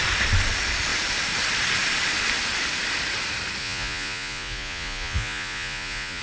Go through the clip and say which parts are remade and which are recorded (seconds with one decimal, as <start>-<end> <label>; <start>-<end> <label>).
0.0-3.6 recorded; 3.6-6.2 remade